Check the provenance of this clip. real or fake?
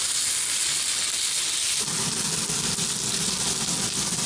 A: real